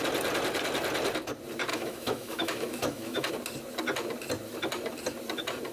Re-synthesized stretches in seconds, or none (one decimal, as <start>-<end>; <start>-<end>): 1.7-3.3